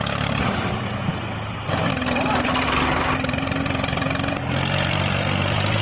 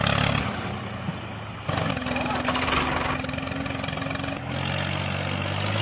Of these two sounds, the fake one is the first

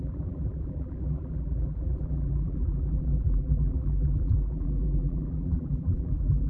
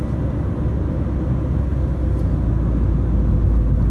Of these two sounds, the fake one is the first